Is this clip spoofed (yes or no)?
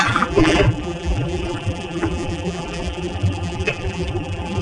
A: yes